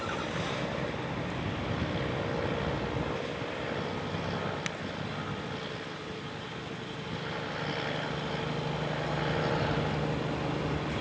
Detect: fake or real real